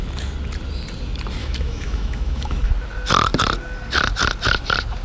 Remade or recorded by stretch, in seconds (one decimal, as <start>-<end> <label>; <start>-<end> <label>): 0.0-1.4 recorded; 1.4-2.7 remade; 2.7-5.0 recorded